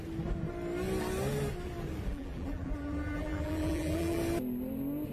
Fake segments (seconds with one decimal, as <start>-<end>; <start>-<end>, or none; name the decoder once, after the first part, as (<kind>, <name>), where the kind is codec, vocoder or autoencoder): 2.1-4.2 (vocoder, BigVGAN v2)